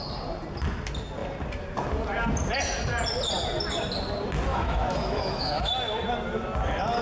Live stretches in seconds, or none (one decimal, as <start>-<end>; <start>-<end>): 0.0-4.5; 5.7-7.0